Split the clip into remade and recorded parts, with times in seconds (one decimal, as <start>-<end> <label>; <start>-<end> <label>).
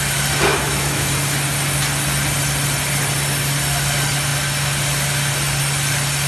0.0-0.5 recorded; 0.5-1.1 remade; 1.1-6.3 recorded